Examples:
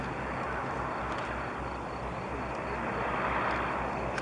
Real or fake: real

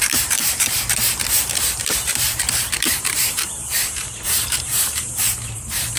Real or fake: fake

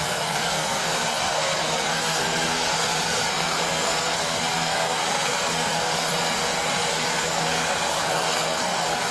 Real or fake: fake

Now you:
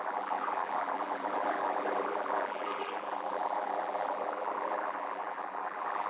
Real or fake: fake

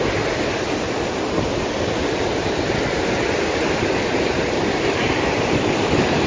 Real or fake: real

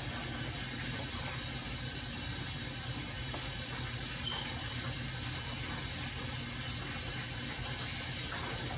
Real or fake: real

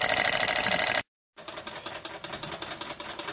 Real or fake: real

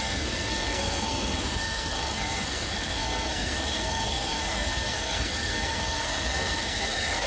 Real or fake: fake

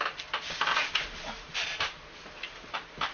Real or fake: fake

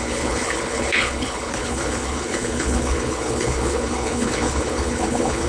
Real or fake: fake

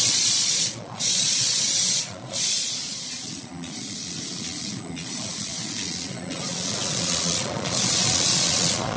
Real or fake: fake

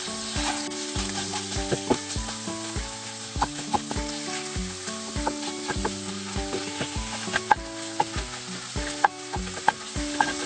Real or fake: real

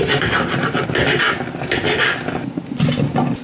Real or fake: real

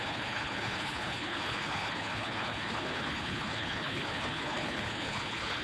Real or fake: fake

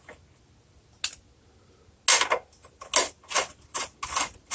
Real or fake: real